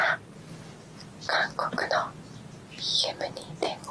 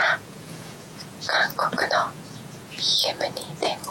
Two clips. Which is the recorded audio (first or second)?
first